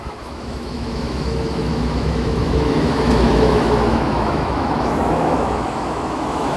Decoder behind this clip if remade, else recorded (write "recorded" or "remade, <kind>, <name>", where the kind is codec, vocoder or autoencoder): remade, autoencoder, DAC-VAE